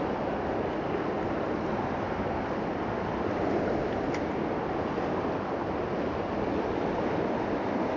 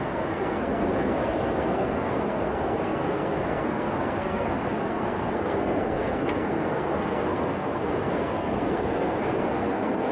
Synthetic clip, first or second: second